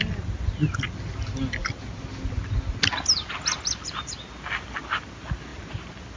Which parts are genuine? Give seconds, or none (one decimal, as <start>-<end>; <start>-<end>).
0.0-6.2